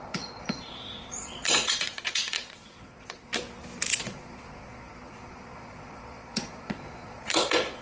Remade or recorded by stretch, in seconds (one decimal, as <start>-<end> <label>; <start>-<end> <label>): 0.0-3.3 remade; 3.3-3.9 recorded; 3.9-7.8 remade